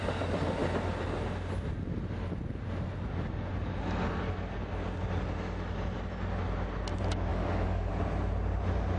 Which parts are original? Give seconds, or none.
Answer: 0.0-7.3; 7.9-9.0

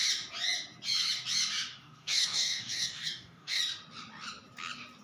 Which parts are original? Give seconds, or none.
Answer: 0.0-1.7; 3.6-5.0